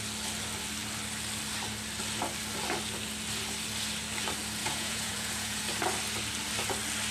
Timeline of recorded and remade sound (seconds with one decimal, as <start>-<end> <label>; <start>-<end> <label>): 0.0-4.6 recorded; 4.6-5.6 remade; 5.6-7.1 recorded